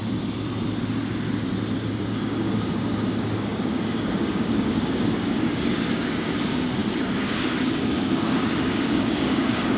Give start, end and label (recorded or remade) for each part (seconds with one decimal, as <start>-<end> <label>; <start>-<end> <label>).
0.0-1.9 recorded; 1.9-9.8 remade